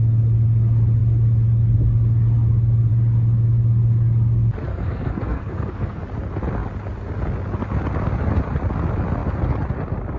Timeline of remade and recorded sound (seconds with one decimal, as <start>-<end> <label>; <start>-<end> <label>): 0.0-4.7 recorded; 4.7-6.0 remade; 6.0-10.2 recorded